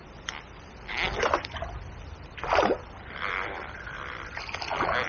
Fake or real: real